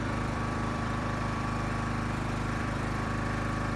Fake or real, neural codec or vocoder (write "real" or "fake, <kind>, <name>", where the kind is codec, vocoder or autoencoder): fake, vocoder, BigVGAN v2